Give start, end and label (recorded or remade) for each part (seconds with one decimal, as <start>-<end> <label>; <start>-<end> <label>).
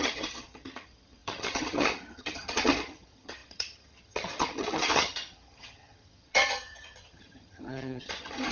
0.0-8.5 remade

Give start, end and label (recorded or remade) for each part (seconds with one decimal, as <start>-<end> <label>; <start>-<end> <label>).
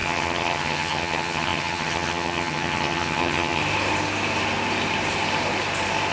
0.0-3.6 remade; 3.6-6.1 recorded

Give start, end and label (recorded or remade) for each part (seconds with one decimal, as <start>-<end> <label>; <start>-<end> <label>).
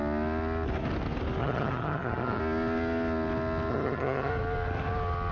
0.0-1.4 recorded; 1.4-2.4 remade; 2.4-3.7 recorded; 3.7-4.3 remade; 4.3-5.3 recorded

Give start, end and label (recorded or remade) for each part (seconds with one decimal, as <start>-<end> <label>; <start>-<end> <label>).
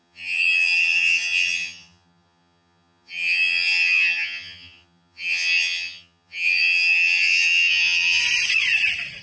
0.0-8.2 remade; 8.2-9.2 recorded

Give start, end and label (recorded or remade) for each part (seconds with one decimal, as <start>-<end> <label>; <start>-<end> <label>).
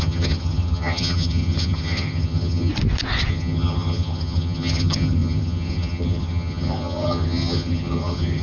0.0-2.7 remade; 2.7-3.3 recorded; 3.3-8.4 remade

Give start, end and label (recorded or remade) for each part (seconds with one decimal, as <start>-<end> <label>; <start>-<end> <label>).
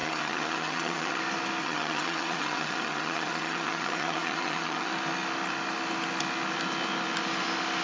0.0-1.2 remade; 1.2-1.6 recorded; 1.6-4.9 remade; 4.9-7.8 recorded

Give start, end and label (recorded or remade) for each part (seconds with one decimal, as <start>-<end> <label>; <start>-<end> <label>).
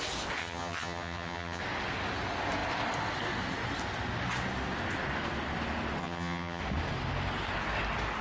0.0-0.4 recorded; 0.4-1.6 remade; 1.6-6.0 recorded; 6.0-6.6 remade; 6.6-8.2 recorded